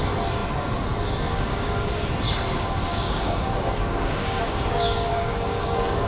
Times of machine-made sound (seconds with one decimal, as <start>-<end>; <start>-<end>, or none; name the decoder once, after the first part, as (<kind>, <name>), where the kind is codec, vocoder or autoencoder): 1.5-2.1 (codec, DAC); 2.9-6.1